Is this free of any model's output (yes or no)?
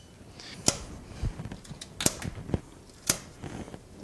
yes